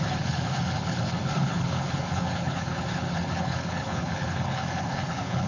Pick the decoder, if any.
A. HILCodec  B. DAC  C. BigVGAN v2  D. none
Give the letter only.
A